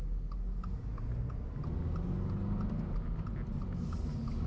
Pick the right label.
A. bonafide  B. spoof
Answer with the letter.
A